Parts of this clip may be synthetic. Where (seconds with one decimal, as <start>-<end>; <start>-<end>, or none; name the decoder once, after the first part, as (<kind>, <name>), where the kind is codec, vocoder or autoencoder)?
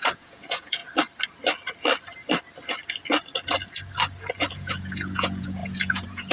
0.0-0.8 (vocoder, Vocos); 4.5-6.3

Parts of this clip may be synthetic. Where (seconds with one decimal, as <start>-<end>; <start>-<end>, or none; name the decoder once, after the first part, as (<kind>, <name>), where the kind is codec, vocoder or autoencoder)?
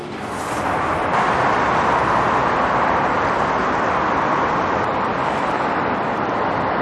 none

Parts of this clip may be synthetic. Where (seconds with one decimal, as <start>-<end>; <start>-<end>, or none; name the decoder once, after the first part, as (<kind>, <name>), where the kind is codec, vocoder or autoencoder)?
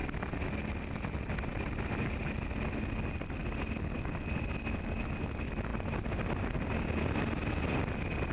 none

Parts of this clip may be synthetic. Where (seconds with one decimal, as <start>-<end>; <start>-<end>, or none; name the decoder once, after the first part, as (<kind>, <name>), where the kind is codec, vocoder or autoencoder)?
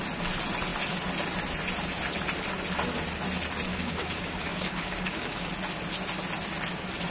3.7-5.5 (codec, DAC)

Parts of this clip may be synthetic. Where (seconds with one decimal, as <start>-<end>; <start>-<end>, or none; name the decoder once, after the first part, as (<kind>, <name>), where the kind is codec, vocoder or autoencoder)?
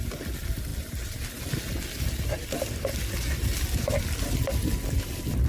none